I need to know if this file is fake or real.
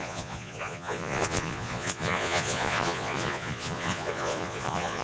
fake